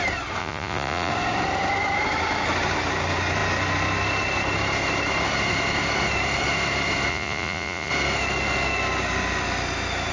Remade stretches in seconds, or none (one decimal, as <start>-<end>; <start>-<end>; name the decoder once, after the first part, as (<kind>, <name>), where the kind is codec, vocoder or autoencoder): 0.4-1.1 (vocoder, Vocos); 7.1-7.9